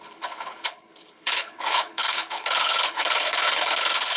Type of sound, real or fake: fake